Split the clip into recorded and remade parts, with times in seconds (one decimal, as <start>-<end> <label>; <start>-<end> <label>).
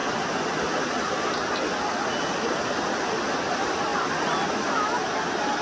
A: 0.0-5.6 recorded